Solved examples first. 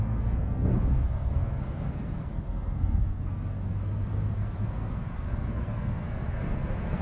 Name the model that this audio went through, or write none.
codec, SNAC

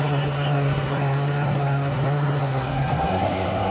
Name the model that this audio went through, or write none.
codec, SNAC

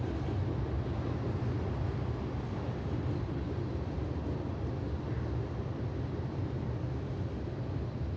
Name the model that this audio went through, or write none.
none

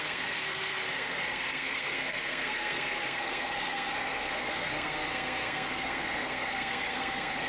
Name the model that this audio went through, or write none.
codec, SNAC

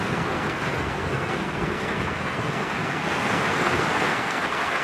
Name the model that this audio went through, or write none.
codec, SNAC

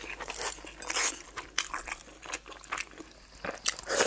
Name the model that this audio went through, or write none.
none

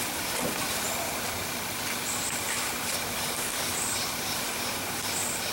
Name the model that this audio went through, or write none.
none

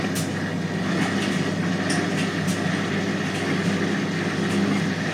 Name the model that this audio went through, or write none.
none